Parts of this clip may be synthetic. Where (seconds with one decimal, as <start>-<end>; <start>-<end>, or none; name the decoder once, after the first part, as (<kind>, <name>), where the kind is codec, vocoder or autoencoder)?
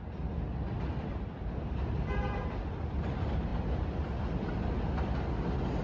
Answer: 0.9-3.0 (vocoder, BigVGAN v2)